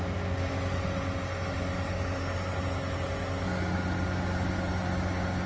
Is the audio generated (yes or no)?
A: no